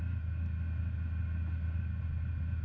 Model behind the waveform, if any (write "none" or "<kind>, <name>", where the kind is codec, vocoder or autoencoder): none